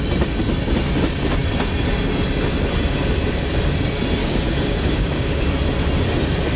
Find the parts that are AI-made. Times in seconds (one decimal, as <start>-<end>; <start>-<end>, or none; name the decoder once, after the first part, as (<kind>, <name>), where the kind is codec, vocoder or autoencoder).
4.2-5.4 (codec, DAC)